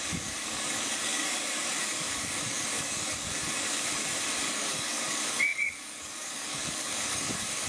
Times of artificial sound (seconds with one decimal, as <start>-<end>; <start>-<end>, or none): 0.0-3.9; 4.4-7.7